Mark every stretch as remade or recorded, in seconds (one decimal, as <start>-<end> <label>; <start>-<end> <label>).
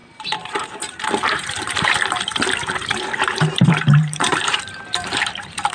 0.0-5.7 remade